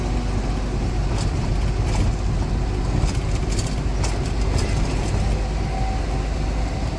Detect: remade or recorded recorded